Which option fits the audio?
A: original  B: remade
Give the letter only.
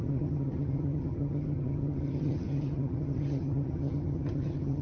B